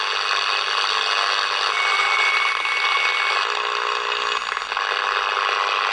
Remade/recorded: recorded